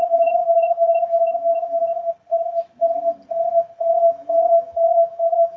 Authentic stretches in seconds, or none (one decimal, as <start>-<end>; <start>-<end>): 1.9-4.0